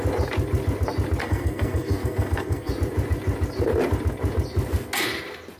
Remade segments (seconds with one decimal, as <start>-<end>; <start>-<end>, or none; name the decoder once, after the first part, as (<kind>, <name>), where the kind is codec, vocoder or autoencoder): 1.2-2.7 (codec, SNAC)

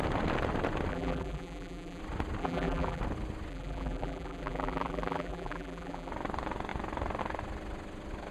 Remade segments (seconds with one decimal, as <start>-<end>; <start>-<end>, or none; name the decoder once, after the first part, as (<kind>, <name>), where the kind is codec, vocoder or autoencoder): 0.9-2.0 (vocoder, BigVGAN v2); 2.4-3.0; 3.5-6.1

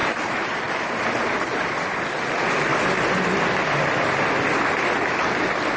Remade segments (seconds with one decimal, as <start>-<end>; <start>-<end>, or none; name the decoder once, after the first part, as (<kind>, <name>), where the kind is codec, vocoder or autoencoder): 0.0-0.7 (vocoder, BigVGAN v2)

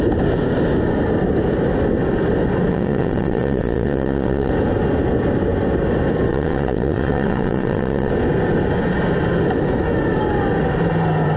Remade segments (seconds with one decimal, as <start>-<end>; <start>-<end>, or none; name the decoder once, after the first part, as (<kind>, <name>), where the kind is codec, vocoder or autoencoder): 2.7-4.5 (vocoder, WaveNeXt); 6.3-8.1

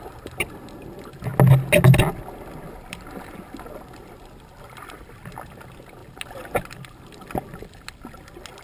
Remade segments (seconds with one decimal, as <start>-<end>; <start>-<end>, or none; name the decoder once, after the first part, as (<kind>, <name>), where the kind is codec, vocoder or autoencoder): none

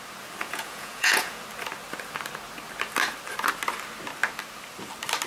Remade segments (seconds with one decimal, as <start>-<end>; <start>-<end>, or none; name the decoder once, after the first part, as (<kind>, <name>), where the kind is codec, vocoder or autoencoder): 0.4-1.4 (vocoder, Vocos)

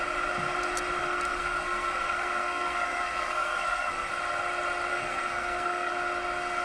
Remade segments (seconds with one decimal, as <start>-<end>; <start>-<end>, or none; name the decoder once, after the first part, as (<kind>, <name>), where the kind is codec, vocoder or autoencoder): 1.0-4.1 (codec, SNAC); 4.9-5.9